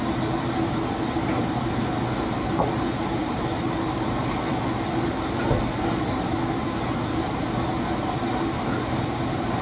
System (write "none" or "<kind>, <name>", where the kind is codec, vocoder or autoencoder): none